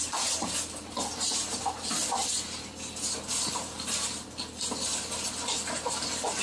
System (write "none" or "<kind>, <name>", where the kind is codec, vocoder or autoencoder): none